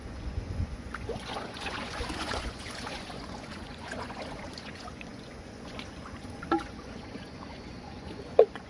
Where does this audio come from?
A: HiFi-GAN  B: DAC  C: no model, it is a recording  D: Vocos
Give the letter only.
D